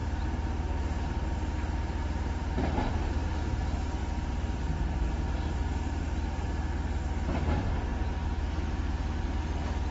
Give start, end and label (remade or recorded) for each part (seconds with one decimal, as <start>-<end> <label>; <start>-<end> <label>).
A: 0.0-4.0 recorded; 4.0-5.1 remade; 5.1-9.9 recorded